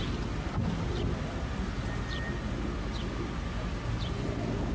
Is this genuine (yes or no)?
yes